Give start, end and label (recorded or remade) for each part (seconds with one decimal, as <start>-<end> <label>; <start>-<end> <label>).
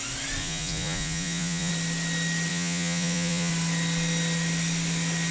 0.0-0.4 recorded; 0.4-1.7 remade; 1.7-2.5 recorded; 2.5-3.5 remade; 3.5-5.3 recorded